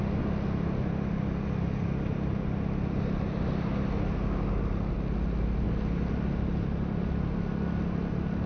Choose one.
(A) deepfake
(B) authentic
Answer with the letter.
B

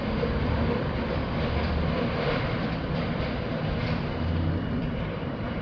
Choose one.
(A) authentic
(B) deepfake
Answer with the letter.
B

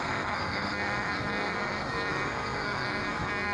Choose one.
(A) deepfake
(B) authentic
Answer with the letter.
A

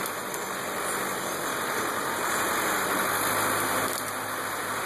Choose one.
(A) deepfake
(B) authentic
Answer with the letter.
A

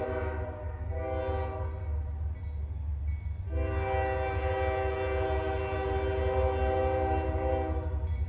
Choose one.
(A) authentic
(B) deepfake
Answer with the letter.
A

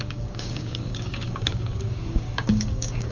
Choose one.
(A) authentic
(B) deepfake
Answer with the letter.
B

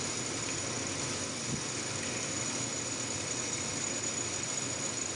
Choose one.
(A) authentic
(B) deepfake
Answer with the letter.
A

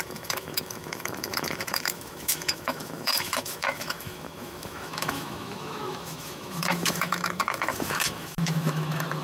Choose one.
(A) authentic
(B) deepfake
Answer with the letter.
B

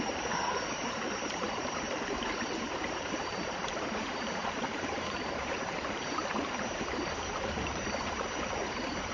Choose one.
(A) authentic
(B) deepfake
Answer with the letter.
B